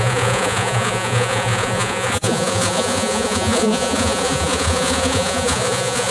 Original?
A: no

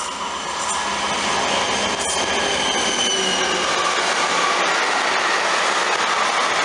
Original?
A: yes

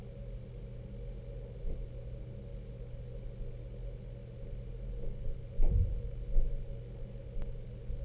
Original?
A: yes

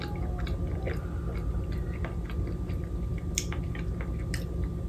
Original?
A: yes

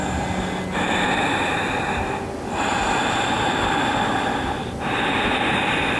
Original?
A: yes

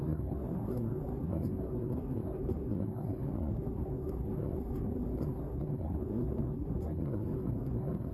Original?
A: no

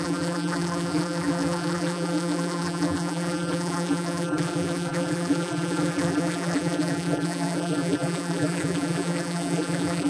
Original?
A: no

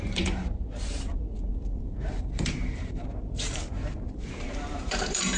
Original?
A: no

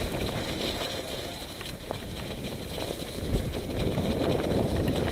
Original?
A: no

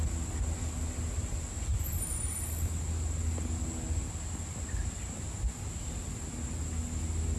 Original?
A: yes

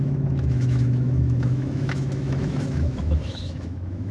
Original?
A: no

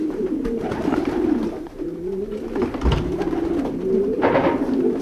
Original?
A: yes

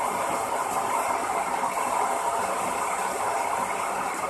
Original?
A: yes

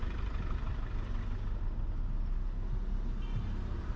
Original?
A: yes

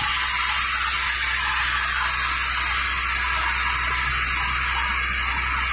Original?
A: yes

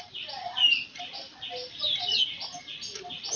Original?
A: yes